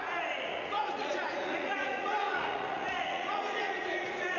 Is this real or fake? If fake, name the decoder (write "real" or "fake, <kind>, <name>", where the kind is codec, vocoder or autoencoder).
fake, vocoder, Vocos